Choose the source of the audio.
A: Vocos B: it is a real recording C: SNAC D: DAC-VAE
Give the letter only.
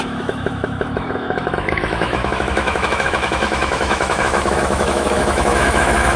D